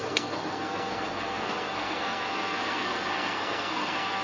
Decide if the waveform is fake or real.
fake